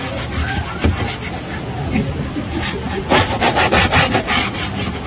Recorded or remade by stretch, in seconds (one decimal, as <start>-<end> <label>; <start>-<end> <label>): 0.0-5.1 recorded